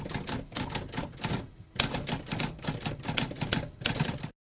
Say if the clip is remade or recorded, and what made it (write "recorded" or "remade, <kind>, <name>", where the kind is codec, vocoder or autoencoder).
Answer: recorded